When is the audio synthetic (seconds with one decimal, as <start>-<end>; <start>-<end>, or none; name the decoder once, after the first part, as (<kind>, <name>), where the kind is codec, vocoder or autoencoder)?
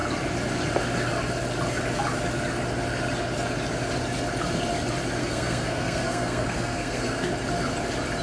5.2-7.3 (codec, SNAC)